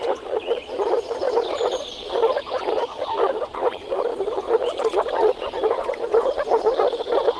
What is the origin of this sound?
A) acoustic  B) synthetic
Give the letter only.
B